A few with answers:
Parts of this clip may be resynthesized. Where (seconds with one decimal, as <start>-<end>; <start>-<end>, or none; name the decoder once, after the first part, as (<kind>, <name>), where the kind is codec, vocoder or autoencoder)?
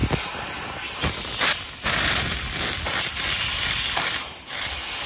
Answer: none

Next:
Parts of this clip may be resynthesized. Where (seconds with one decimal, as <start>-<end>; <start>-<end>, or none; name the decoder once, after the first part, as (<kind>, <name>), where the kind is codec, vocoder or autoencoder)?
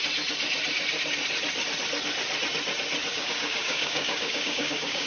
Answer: 3.1-5.1 (codec, DAC)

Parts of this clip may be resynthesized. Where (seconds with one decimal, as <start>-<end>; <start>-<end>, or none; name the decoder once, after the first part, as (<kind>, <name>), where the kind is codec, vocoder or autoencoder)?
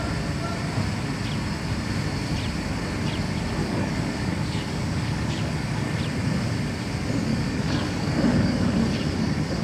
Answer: 3.6-6.0 (codec, DAC); 7.3-9.6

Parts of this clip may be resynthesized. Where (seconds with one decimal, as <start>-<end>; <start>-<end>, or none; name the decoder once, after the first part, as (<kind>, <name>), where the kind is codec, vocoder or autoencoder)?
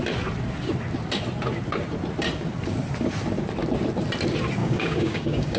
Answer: 4.6-5.6 (codec, DAC)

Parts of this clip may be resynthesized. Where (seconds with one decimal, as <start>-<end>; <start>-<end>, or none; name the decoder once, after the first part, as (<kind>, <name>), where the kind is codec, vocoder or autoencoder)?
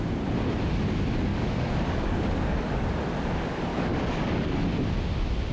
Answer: 1.3-2.9 (codec, DAC); 3.7-4.6